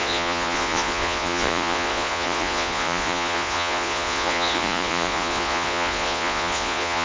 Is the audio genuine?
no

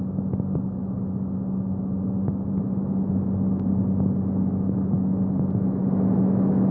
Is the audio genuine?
yes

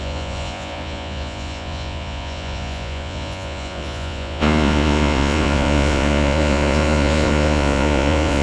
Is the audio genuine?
no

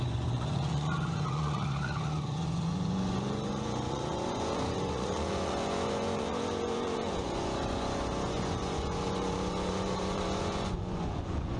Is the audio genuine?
no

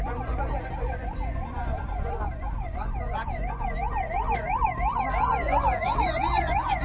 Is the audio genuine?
no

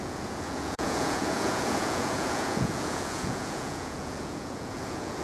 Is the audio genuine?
no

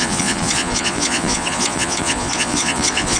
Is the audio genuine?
no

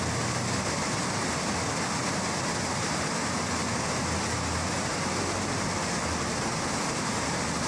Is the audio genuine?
yes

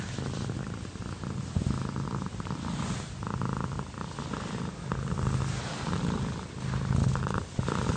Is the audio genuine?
yes